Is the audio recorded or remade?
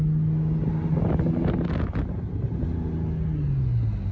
recorded